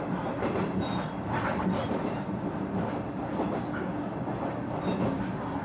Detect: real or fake real